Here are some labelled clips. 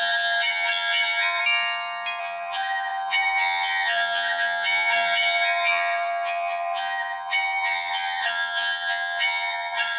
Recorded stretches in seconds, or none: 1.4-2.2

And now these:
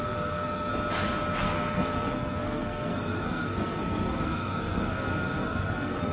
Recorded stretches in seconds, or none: 0.7-1.4